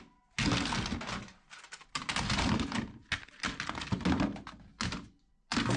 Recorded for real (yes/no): yes